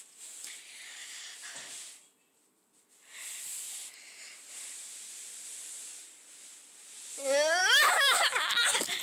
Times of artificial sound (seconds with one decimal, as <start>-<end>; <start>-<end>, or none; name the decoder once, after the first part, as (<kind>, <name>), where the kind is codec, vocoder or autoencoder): 7.6-8.5 (autoencoder, DAC-VAE)